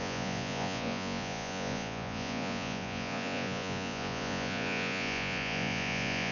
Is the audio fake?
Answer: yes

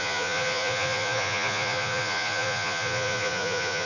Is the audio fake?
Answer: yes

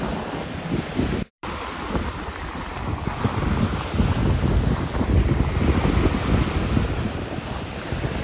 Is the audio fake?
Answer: no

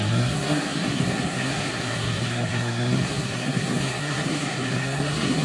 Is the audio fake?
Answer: yes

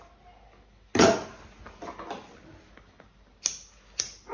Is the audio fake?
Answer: no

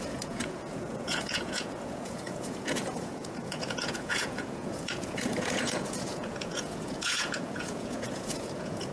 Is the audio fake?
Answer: yes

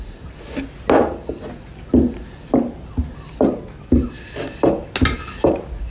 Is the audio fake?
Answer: no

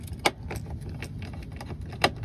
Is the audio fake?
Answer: no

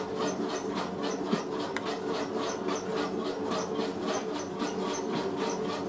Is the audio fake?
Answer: no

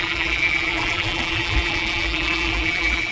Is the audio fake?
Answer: yes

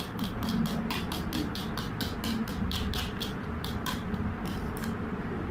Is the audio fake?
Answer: no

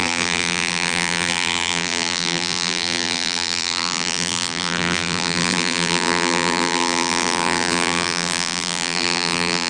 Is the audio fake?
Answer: yes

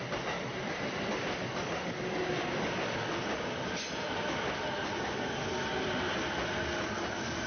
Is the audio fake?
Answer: no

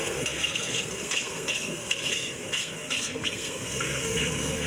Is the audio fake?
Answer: yes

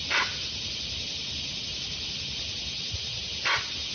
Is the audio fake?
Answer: no